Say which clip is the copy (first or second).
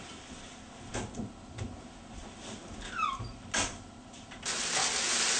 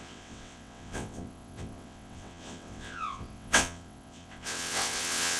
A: second